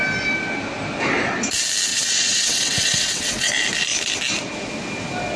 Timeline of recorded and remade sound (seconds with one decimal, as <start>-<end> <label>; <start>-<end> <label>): 0.0-1.9 recorded; 1.9-3.5 remade; 3.5-5.4 recorded